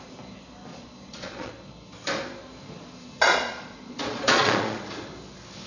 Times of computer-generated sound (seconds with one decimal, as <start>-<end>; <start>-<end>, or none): 0.7-1.5; 3.3-4.8